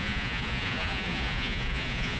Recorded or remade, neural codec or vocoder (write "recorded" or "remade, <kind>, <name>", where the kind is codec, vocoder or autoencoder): remade, vocoder, Vocos